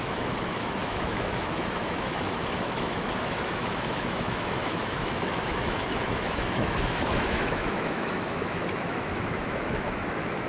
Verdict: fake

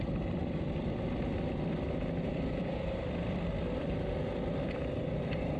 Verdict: fake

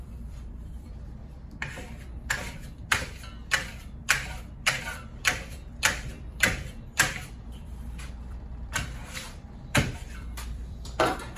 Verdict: fake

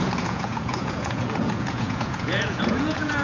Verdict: fake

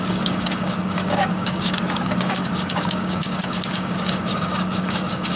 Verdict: fake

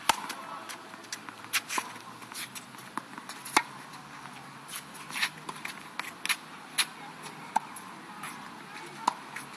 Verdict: real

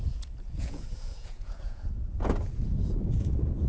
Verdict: fake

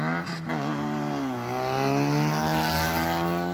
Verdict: real